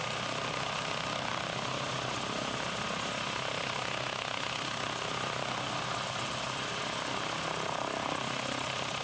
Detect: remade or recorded recorded